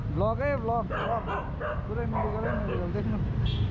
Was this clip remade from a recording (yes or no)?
no